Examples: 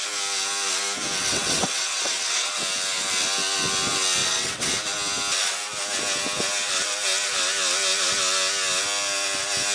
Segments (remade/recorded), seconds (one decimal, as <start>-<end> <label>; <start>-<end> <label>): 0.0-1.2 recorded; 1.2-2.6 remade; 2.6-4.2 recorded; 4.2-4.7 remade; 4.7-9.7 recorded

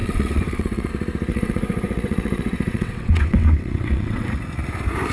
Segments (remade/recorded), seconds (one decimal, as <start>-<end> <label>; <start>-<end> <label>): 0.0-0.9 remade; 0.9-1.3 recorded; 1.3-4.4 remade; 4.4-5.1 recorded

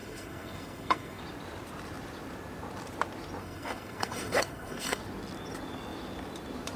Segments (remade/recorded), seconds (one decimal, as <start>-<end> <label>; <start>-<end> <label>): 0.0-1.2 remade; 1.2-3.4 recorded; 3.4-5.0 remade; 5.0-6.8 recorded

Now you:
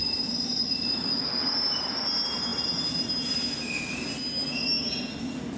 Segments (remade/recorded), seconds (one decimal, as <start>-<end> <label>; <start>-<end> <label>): 0.0-1.1 remade; 1.1-5.6 recorded